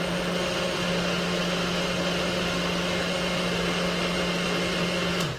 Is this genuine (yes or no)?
yes